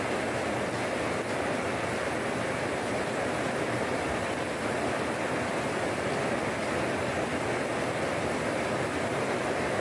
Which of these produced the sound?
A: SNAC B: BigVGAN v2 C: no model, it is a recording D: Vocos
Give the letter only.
C